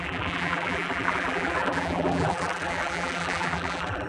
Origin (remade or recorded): remade